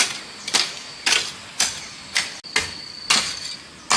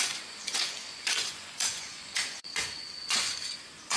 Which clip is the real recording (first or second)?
first